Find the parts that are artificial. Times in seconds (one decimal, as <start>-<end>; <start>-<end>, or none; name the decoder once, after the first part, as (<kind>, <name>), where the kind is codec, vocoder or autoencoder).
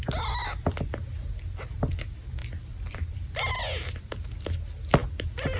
none